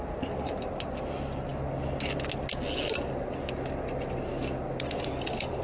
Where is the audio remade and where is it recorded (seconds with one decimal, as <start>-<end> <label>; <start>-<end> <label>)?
0.0-5.6 recorded